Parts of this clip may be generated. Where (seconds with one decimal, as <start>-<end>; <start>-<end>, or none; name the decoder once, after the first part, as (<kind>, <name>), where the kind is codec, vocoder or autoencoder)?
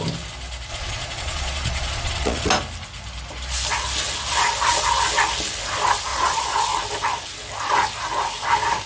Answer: 0.7-2.5 (vocoder, Vocos); 6.1-6.6